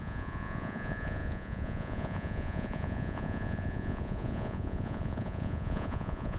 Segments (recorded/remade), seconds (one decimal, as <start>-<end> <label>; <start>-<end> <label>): 0.0-6.4 remade